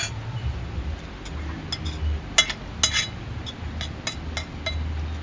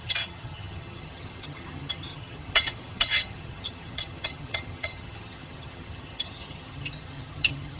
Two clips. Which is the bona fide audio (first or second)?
first